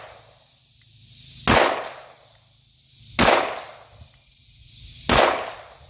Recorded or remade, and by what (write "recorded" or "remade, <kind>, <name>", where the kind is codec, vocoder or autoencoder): recorded